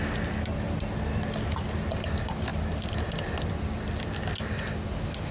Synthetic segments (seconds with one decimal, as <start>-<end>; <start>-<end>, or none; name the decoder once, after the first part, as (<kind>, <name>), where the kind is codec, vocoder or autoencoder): none